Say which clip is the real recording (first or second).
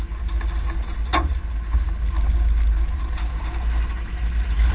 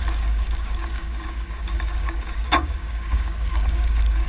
first